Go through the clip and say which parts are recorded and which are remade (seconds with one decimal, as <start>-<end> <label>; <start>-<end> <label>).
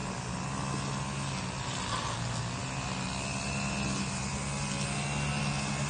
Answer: 0.0-5.9 recorded